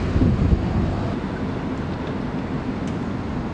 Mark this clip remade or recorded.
recorded